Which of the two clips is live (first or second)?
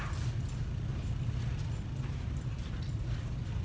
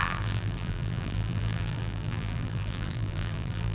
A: first